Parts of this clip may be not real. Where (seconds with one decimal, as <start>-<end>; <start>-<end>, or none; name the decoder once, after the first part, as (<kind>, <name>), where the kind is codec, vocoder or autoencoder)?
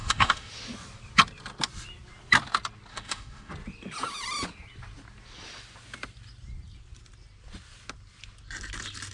0.0-0.5 (autoencoder, DAC-VAE); 2.9-3.5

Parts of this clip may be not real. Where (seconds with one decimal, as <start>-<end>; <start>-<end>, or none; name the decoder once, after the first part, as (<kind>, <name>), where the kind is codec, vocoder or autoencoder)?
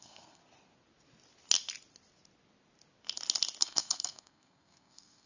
0.0-0.4 (codec, SNAC); 3.6-5.3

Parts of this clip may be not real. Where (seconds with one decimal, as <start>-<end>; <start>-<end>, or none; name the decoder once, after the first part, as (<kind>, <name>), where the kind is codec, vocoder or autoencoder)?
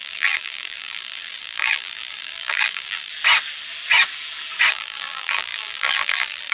0.0-3.1 (vocoder, BigVGAN v2); 4.7-6.5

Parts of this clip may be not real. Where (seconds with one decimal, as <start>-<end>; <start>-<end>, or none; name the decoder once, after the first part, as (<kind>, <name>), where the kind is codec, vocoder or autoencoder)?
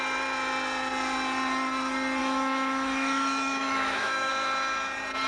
2.2-4.3 (autoencoder, DAC-VAE)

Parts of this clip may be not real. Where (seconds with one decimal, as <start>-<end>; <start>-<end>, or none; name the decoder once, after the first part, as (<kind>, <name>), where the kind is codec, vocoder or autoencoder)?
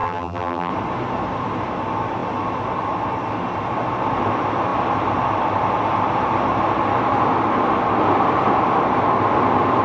0.0-0.7 (vocoder, BigVGAN v2)